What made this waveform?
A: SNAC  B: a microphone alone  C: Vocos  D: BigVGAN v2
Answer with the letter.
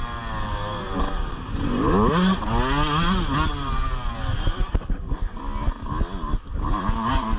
B